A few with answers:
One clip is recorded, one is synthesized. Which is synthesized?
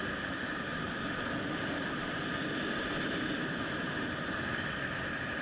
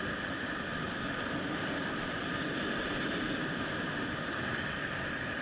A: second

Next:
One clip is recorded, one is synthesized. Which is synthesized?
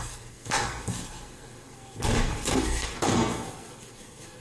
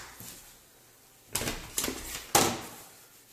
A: first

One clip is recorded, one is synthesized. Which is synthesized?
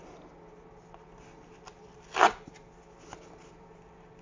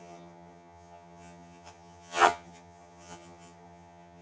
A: second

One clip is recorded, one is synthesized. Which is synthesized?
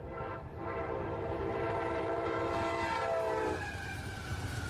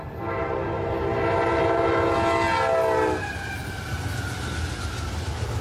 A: first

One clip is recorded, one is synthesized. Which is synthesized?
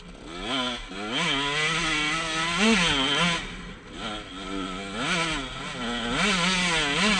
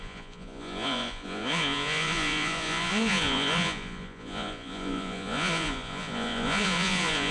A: second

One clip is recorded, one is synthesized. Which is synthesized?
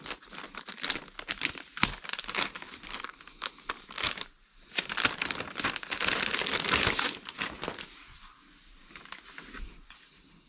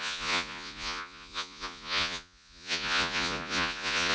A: second